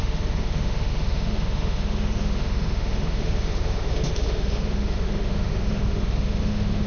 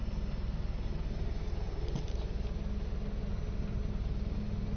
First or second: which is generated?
first